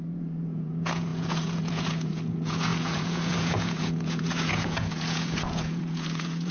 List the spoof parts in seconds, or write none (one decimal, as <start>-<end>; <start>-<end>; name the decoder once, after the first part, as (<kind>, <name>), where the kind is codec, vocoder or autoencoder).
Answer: 0.0-6.5 (vocoder, Vocos)